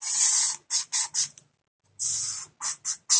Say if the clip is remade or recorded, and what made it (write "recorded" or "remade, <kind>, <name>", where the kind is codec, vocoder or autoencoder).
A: recorded